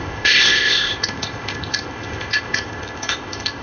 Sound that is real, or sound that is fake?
fake